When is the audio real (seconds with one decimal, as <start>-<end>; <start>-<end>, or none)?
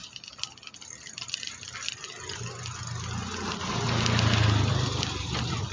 0.0-5.7